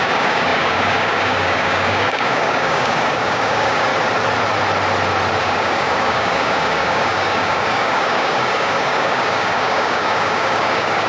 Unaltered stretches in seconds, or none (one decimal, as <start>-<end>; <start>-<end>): 3.9-5.4